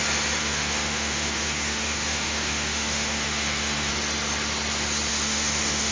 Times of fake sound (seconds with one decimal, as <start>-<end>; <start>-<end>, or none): 0.4-3.9; 5.1-5.9